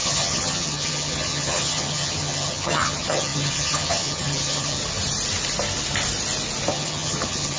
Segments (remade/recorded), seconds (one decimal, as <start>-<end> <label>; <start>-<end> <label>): 0.0-4.8 remade; 4.8-6.7 recorded; 6.7-7.6 remade